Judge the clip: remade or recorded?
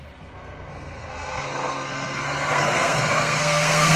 remade